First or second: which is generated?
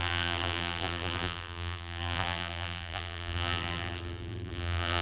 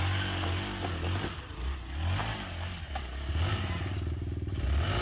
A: first